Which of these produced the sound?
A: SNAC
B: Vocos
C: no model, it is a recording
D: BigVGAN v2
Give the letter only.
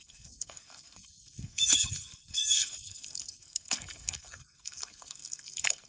A